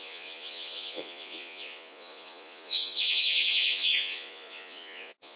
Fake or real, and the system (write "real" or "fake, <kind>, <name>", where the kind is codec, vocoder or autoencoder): fake, vocoder, Vocos